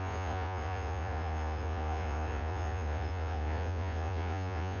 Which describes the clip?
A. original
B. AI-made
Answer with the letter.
B